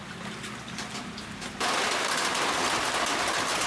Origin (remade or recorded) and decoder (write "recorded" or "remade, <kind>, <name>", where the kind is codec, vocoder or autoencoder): recorded